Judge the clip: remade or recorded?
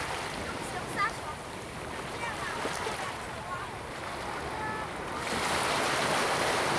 recorded